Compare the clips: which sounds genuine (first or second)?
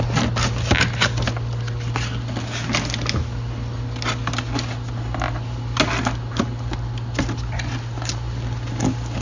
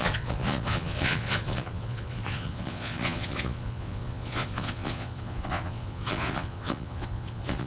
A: first